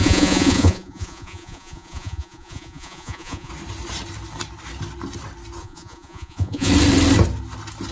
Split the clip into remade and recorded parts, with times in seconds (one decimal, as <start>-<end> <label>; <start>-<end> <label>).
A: 0.0-3.5 remade; 3.5-5.6 recorded; 5.6-6.7 remade; 6.7-7.9 recorded